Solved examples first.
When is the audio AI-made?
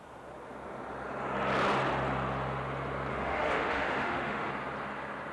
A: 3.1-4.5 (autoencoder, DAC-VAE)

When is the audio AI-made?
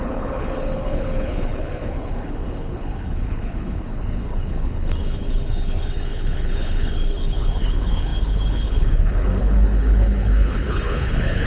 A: 0.0-11.5 (codec, HILCodec)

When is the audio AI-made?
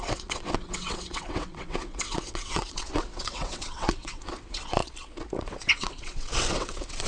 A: 0.0-4.8 (vocoder, WaveNeXt); 5.3-7.1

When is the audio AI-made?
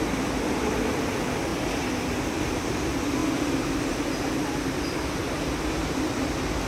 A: none